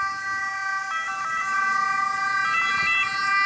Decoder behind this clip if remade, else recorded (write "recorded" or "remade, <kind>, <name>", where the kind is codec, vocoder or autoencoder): recorded